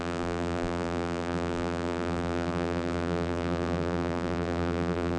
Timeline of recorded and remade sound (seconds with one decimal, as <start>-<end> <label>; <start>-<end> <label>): 0.0-5.2 remade